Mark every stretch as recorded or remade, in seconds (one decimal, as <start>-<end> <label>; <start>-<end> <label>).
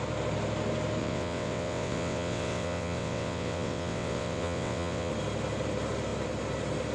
0.0-1.0 recorded; 1.0-5.1 remade; 5.1-6.9 recorded